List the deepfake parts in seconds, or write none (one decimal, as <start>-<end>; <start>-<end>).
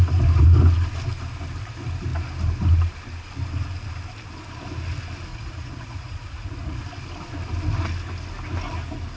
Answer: 5.3-6.8